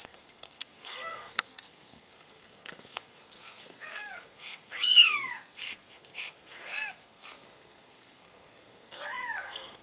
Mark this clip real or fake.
fake